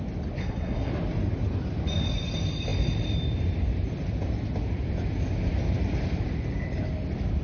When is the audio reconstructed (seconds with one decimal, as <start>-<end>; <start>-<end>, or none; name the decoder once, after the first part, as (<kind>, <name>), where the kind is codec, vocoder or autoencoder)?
0.4-0.9 (codec, SNAC)